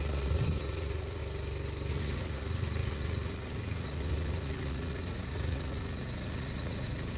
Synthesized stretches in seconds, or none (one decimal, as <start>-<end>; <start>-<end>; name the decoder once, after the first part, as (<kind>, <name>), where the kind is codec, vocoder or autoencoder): 0.0-1.2 (vocoder, Vocos); 1.9-7.2